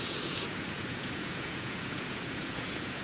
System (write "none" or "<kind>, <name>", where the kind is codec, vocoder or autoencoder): vocoder, Vocos